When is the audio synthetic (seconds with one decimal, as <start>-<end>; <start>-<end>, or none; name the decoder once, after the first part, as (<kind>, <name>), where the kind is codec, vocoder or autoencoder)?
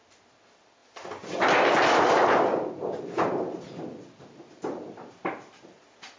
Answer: none